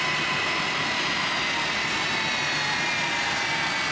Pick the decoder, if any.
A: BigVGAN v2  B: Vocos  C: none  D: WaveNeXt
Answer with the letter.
C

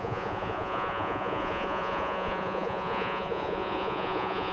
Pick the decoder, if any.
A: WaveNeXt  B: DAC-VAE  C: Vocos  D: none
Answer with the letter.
C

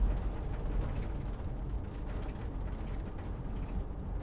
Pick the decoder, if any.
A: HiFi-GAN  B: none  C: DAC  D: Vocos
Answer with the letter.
B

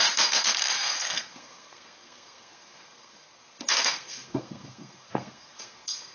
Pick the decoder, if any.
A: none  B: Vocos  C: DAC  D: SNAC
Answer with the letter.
D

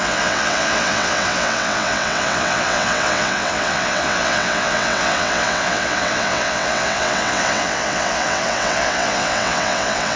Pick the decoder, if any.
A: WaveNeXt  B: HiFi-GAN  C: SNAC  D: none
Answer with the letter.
A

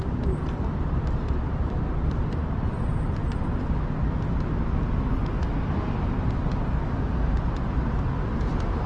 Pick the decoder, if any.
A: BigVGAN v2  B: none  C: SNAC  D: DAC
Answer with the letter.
B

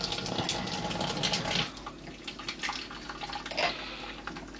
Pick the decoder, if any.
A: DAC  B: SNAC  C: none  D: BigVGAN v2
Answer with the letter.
C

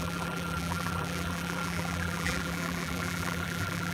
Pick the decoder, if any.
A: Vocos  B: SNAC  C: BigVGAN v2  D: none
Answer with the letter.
C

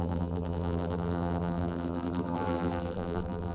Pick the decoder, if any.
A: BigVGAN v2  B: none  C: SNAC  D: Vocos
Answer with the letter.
A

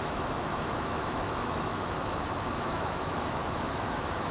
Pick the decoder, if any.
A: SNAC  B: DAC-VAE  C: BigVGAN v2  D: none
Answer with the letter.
B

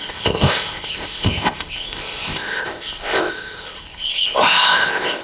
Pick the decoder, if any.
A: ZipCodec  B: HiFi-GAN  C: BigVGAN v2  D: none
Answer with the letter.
A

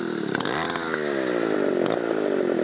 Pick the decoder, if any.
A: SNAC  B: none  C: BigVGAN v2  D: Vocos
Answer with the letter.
B